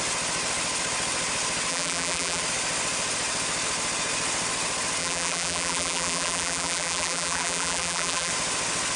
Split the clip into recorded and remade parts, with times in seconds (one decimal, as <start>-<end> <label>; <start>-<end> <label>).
0.0-1.7 recorded; 1.7-2.4 remade; 2.4-5.0 recorded; 5.0-8.3 remade; 8.3-9.0 recorded